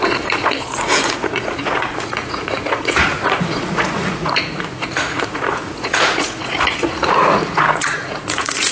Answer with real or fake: fake